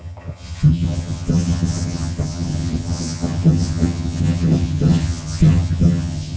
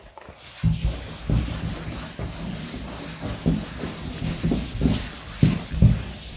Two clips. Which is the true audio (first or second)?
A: second